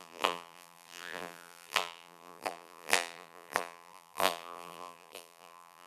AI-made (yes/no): yes